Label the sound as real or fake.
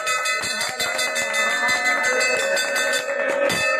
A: real